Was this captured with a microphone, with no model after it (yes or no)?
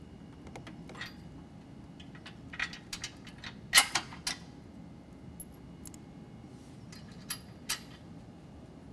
yes